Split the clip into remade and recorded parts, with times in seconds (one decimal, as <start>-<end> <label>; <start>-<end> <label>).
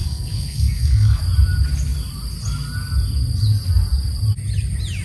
0.0-1.2 remade; 1.2-5.0 recorded